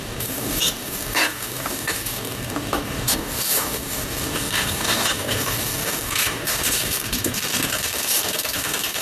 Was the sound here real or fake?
fake